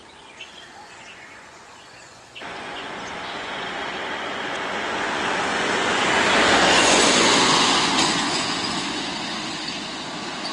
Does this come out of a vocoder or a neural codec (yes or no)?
yes